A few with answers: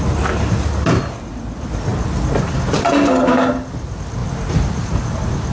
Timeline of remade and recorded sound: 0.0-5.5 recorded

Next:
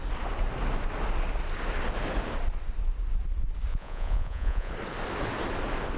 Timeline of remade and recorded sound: 0.0-3.7 recorded; 3.7-4.7 remade; 4.7-6.0 recorded

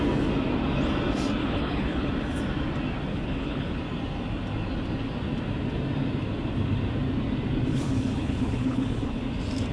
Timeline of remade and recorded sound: 0.0-1.4 recorded; 1.4-2.1 remade; 2.1-3.1 recorded; 3.1-3.8 remade; 3.8-7.7 recorded; 7.7-9.2 remade; 9.2-9.7 recorded

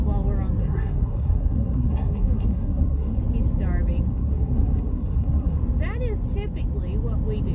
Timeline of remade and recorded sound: 0.0-0.6 recorded; 0.6-3.2 remade; 3.2-4.1 recorded; 4.1-5.6 remade; 5.6-7.5 recorded

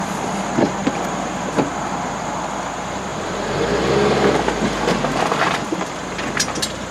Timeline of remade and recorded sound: 0.0-6.9 recorded

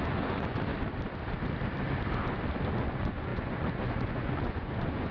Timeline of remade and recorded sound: 0.0-0.7 remade; 0.7-2.7 recorded; 2.7-5.1 remade

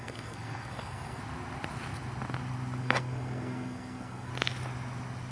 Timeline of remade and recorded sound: 0.0-1.2 remade; 1.2-2.8 recorded; 2.8-4.3 remade; 4.3-5.3 recorded